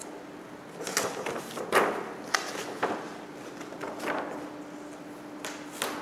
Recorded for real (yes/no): yes